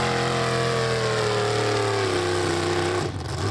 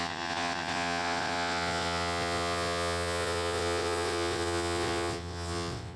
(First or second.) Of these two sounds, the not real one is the second